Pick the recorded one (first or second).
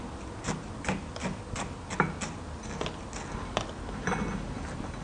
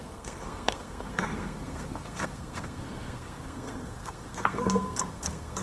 first